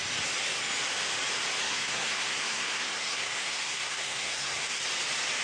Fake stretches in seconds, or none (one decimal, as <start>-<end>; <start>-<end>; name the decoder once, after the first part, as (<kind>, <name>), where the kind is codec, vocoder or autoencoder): 1.6-4.8 (codec, SNAC)